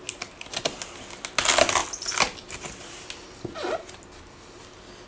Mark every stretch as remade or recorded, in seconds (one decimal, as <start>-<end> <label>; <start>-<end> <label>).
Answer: 0.0-5.1 recorded